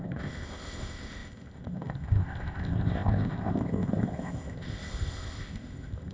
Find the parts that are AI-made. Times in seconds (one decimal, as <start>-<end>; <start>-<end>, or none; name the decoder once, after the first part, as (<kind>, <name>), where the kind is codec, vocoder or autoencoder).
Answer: 0.0-6.1 (codec, ZipCodec)